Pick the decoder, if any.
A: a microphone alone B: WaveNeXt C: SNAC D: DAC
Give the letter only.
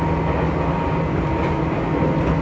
A